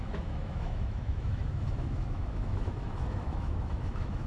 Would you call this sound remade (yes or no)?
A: yes